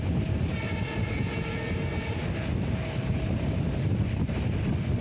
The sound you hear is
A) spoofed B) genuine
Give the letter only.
B